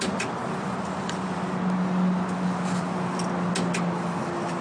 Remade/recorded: recorded